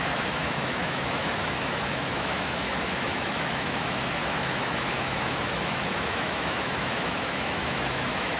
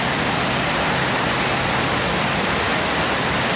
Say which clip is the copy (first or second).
first